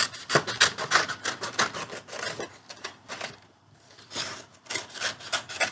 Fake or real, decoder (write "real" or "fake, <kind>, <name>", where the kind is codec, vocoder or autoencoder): real